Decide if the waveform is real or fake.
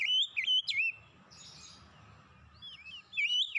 real